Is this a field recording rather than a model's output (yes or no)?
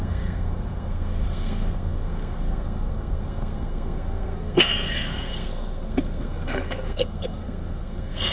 no